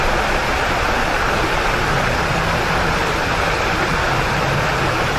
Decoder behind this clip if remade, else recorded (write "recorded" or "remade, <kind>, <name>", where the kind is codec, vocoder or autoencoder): recorded